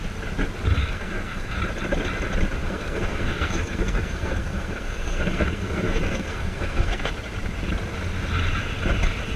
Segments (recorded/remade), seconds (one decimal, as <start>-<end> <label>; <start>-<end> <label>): 0.0-0.8 recorded; 0.8-1.6 remade; 1.6-2.6 recorded; 2.6-7.1 remade; 7.1-9.4 recorded